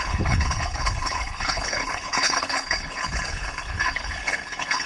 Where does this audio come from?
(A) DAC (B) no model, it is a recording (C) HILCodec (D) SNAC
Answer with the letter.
C